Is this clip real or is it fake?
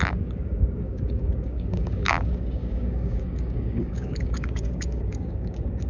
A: fake